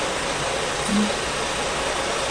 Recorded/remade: recorded